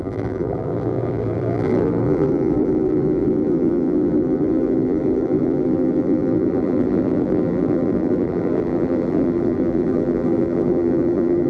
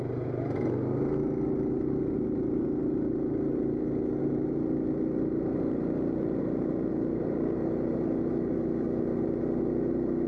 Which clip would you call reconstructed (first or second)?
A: first